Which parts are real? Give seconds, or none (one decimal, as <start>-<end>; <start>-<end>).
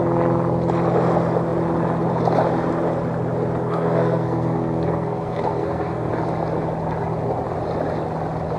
0.0-3.6; 6.1-8.6